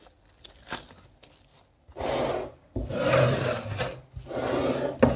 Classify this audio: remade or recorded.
recorded